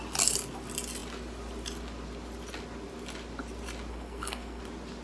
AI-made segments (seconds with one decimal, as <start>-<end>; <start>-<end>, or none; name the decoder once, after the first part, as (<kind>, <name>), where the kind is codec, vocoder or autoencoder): 3.9-4.6 (codec, SNAC)